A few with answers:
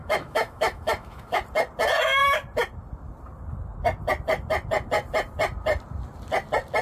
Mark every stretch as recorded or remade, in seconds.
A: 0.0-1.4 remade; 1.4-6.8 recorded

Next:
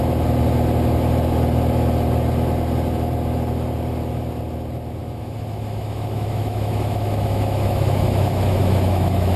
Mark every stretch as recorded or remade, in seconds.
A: 0.0-5.0 recorded; 5.0-9.4 remade

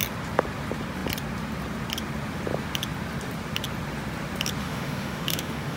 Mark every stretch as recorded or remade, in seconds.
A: 0.0-4.6 recorded; 4.6-5.8 remade

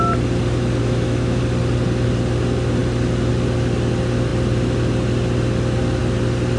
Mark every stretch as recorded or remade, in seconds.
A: 0.0-0.8 recorded; 0.8-1.4 remade; 1.4-6.6 recorded

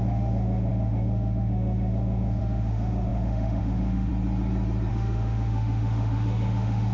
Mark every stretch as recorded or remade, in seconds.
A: 0.0-4.1 remade; 4.1-4.9 recorded; 4.9-6.9 remade

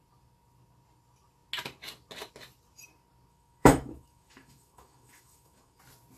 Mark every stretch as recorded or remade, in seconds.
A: 0.0-3.3 recorded; 3.3-5.8 remade; 5.8-6.2 recorded

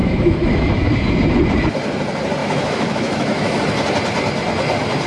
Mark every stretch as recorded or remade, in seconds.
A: 0.0-0.9 remade; 0.9-2.4 recorded; 2.4-3.6 remade; 3.6-5.1 recorded

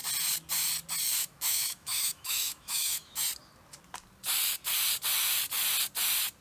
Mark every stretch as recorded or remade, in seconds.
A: 0.0-1.2 recorded; 1.2-3.2 remade; 3.2-6.4 recorded